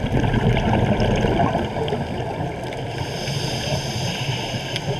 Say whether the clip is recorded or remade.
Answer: recorded